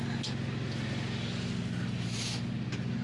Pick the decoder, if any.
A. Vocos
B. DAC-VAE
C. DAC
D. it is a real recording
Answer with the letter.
D